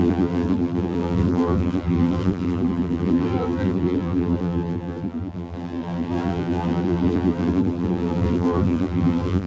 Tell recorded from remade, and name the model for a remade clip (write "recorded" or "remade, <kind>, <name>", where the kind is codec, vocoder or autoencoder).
remade, vocoder, BigVGAN v2